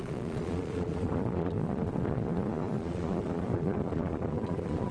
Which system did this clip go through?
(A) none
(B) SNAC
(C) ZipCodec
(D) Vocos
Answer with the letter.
D